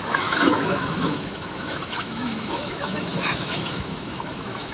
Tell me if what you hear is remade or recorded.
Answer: remade